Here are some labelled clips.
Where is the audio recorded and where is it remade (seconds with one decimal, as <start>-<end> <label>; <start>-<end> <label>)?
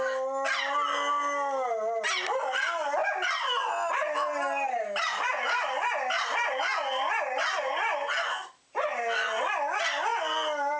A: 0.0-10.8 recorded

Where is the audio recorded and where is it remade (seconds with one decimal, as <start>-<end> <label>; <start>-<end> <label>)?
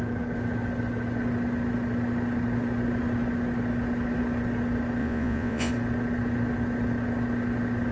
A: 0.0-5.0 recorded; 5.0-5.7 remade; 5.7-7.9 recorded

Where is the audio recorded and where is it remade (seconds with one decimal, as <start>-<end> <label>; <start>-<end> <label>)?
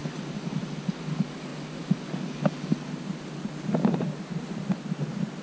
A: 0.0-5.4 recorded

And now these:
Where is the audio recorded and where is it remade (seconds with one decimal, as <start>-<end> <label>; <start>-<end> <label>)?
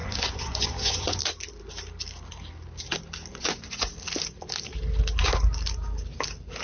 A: 0.0-1.2 remade; 1.2-3.3 recorded; 3.3-3.9 remade; 3.9-6.6 recorded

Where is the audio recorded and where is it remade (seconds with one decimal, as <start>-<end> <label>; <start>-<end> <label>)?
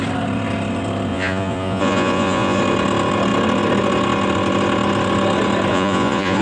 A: 0.0-1.1 recorded; 1.1-2.6 remade; 2.6-5.7 recorded; 5.7-6.4 remade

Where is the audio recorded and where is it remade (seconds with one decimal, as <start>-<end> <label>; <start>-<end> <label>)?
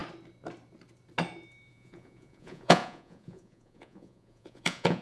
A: 0.0-1.7 recorded; 1.7-5.0 remade